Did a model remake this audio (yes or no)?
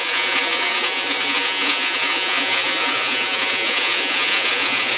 yes